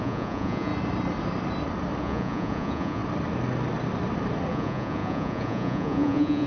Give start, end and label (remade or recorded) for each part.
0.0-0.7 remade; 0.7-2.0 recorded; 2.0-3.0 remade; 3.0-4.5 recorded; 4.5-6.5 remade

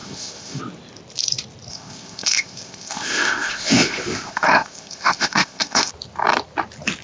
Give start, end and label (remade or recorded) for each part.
0.0-0.6 remade; 0.6-1.7 recorded; 1.7-5.9 remade; 5.9-7.0 recorded

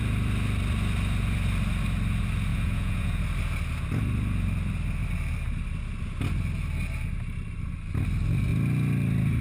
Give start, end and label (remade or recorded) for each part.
0.0-2.5 recorded; 2.5-3.2 remade; 3.2-9.4 recorded

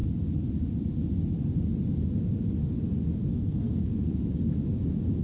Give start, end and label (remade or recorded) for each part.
0.0-3.3 recorded; 3.3-4.2 remade; 4.2-5.2 recorded

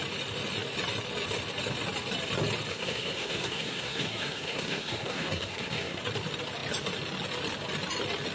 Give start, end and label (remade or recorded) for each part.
0.0-2.7 recorded; 2.7-6.0 remade; 6.0-8.3 recorded

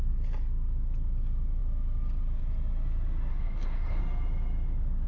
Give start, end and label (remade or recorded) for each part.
0.0-3.3 recorded; 3.3-4.0 remade; 4.0-5.1 recorded